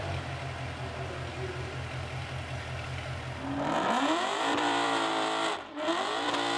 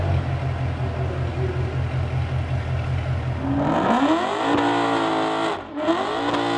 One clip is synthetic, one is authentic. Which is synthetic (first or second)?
first